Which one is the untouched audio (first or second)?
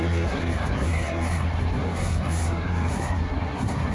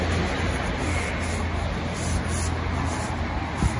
second